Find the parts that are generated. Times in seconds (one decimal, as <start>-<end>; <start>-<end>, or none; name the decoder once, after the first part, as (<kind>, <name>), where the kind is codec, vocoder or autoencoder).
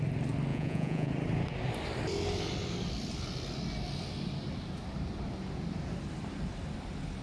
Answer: 0.5-1.1 (vocoder, Vocos)